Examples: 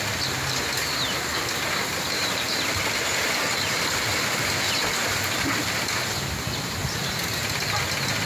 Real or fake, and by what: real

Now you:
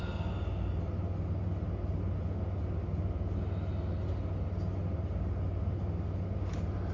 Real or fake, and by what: real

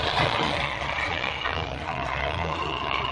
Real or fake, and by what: fake, vocoder, Vocos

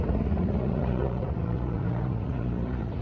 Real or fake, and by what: fake, vocoder, Vocos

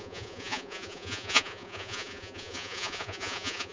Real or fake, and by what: fake, vocoder, Vocos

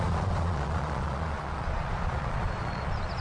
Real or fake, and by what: fake, vocoder, Vocos